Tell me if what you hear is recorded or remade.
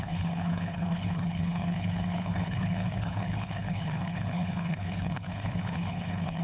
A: remade